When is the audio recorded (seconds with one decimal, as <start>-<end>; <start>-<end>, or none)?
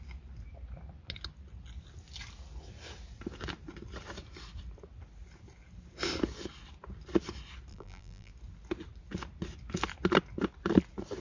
0.0-7.7; 8.3-11.2